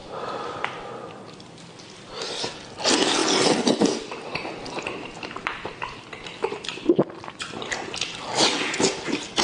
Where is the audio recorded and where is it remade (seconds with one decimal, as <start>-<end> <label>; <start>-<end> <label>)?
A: 0.0-2.2 remade; 2.2-3.2 recorded; 3.2-7.9 remade; 7.9-9.4 recorded